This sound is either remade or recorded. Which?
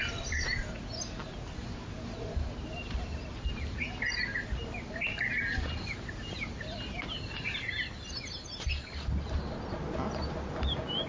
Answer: recorded